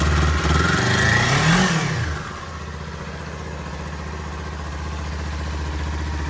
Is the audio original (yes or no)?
yes